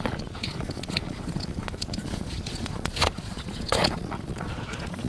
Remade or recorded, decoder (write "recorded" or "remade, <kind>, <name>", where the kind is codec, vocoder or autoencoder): remade, vocoder, Vocos